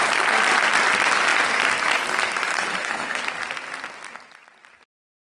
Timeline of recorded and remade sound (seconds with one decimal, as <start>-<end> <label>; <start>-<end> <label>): 0.0-2.5 recorded; 2.5-3.2 remade; 3.2-5.3 recorded